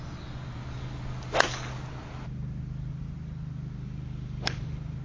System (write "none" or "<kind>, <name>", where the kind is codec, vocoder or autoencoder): none